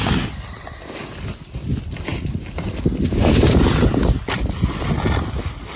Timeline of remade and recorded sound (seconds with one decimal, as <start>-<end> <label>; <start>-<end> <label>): 0.0-5.8 recorded